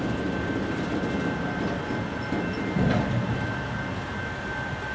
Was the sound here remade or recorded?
recorded